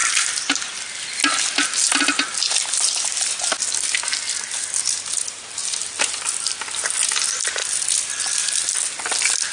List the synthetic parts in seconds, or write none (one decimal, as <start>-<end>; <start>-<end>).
none

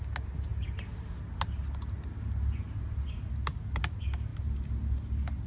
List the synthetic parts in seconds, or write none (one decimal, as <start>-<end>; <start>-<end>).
none

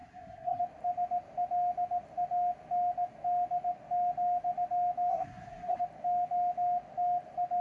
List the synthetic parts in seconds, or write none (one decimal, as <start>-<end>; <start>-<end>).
0.0-0.6; 5.1-5.8

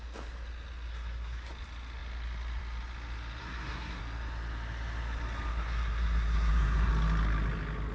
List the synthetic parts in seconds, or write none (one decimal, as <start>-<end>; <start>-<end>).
0.9-1.5; 3.4-4.0; 5.5-6.9

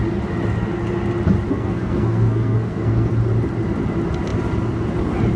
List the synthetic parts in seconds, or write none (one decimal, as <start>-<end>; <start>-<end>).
1.5-3.1

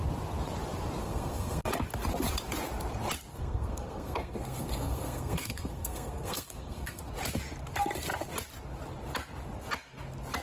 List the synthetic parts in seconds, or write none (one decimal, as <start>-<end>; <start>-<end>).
1.0-1.7; 3.3-7.0

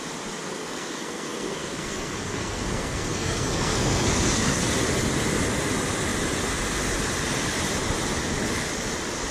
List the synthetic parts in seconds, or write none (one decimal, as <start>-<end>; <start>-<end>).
0.4-4.7